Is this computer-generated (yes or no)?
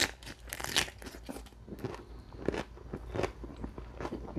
no